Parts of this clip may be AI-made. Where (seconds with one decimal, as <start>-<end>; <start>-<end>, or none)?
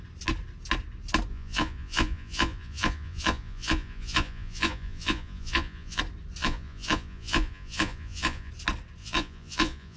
1.3-6.0; 6.4-8.5; 9.0-10.0